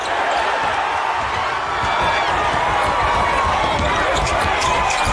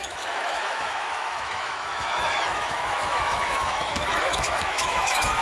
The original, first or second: first